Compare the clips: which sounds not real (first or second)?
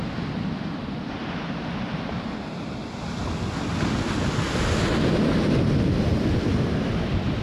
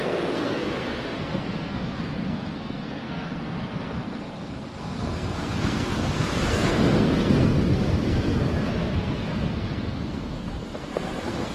second